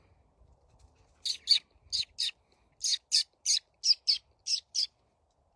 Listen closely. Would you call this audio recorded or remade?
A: recorded